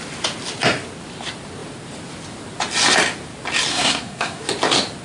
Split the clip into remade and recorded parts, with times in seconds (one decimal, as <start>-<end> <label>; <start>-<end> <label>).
0.0-3.7 recorded; 3.7-4.4 remade; 4.4-5.0 recorded